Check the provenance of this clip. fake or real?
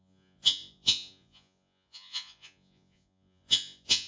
fake